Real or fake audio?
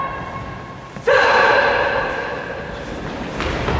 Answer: real